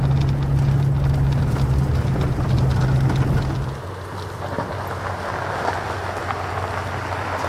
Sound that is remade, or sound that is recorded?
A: recorded